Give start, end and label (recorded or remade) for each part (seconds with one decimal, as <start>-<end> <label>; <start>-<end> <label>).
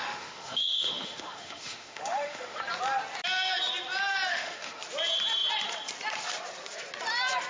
0.0-2.6 remade; 2.6-4.3 recorded; 4.3-4.8 remade; 4.8-7.5 recorded